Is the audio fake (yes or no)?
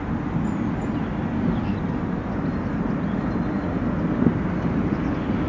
no